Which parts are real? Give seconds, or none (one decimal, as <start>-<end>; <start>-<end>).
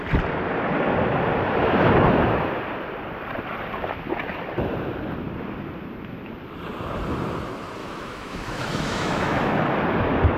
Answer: 0.0-7.8; 9.5-10.4